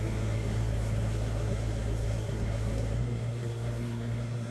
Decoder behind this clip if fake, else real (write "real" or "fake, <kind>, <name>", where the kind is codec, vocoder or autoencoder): fake, codec, SNAC